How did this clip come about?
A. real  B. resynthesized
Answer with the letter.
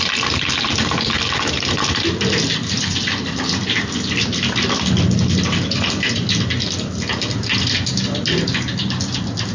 A